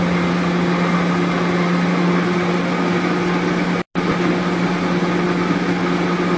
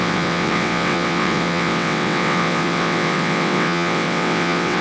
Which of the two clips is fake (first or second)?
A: second